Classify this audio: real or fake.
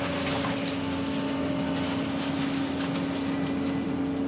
real